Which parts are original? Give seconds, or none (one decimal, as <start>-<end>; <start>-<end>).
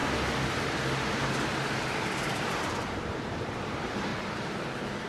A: 0.0-2.4